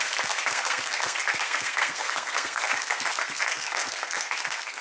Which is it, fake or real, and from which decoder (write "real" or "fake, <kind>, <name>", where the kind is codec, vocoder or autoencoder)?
fake, codec, SNAC